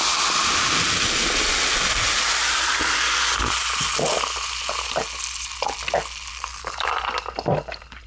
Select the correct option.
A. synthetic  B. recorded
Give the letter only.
B